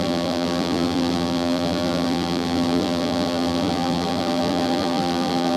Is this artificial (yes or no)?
yes